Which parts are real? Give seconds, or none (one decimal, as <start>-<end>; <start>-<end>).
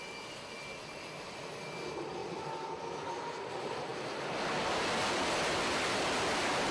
0.0-6.7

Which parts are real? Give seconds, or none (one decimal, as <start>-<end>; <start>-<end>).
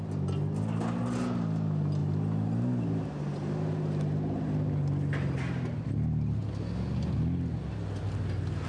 0.0-8.7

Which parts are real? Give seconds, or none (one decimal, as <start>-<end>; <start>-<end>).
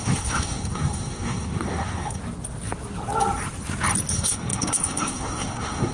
2.2-4.1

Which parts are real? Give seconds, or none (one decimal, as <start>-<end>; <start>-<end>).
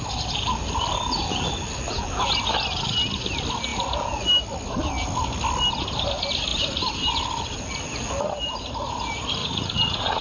0.0-9.4